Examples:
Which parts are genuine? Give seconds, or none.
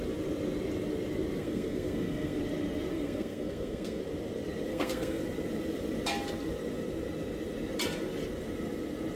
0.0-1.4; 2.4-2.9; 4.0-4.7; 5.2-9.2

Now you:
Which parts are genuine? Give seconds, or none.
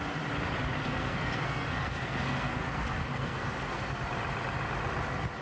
0.0-0.8; 4.0-5.4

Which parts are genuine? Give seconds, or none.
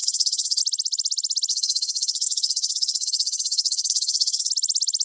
0.6-1.5; 4.5-5.0